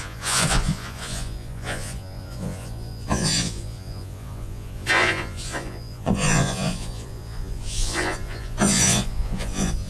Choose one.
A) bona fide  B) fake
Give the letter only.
B